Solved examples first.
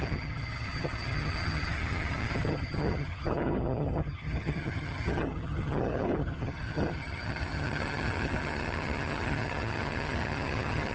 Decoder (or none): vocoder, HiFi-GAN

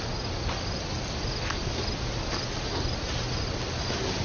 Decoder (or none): none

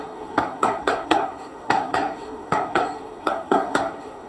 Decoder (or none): codec, SNAC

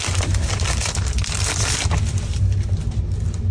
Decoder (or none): none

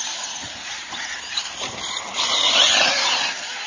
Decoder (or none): none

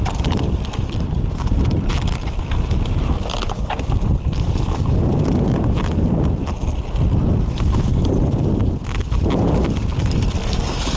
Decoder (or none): vocoder, BigVGAN v2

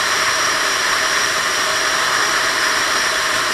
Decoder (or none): vocoder, BigVGAN v2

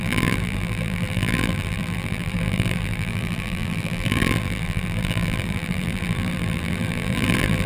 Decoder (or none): vocoder, BigVGAN v2